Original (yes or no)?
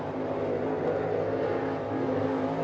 yes